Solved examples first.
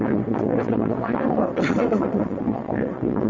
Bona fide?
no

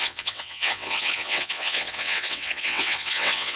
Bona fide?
no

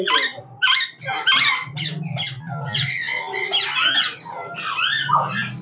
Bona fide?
yes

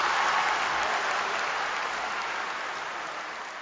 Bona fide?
yes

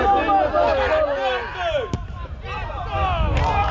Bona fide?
yes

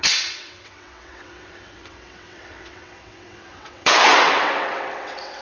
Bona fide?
no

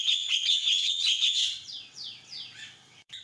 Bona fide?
no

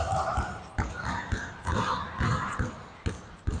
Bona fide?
yes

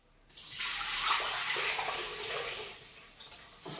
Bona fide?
yes